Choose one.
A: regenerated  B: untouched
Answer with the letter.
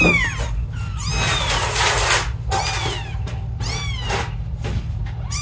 B